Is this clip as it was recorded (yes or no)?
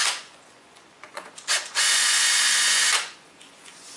no